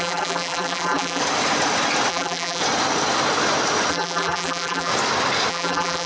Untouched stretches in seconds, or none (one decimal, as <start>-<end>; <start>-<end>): 1.2-2.1; 2.6-3.9; 4.9-5.5